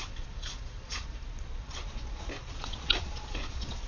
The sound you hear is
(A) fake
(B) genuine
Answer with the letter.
A